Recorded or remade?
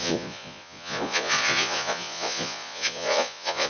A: remade